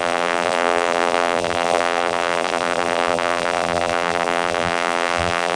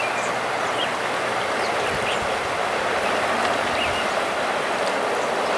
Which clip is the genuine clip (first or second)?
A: second